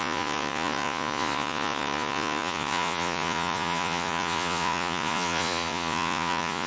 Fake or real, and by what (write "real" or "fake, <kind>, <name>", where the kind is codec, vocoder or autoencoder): fake, vocoder, Vocos